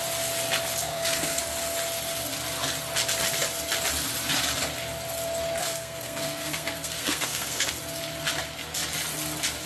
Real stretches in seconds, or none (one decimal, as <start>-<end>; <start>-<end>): 0.0-0.8; 1.4-5.6; 7.7-9.7